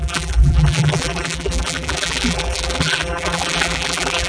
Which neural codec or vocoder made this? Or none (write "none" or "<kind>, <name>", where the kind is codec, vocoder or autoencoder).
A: vocoder, BigVGAN v2